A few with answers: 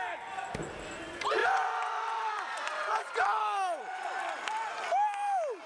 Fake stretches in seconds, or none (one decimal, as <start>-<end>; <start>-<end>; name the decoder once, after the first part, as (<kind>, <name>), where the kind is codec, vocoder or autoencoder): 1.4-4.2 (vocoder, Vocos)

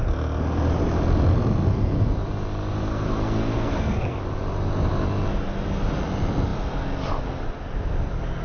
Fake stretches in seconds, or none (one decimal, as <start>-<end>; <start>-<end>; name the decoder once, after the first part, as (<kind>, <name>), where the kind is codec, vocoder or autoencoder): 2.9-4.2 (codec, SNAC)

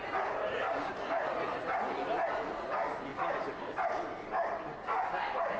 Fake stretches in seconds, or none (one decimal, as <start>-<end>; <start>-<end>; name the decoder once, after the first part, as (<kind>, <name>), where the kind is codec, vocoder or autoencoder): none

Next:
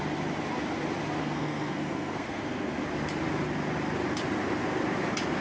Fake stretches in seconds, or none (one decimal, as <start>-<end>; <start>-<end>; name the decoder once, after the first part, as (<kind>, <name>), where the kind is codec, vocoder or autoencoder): 1.2-2.8 (codec, SNAC)

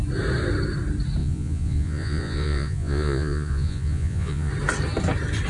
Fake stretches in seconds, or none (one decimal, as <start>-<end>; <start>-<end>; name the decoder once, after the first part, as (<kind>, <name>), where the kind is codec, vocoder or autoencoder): 1.2-4.5 (vocoder, Vocos)

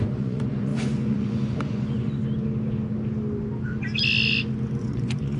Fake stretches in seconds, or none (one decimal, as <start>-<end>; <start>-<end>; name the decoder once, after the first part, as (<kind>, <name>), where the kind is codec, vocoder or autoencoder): 0.0-2.2 (vocoder, Vocos); 4.8-5.4